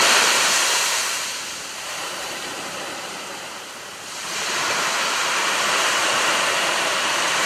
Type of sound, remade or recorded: remade